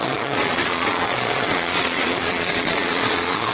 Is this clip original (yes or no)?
no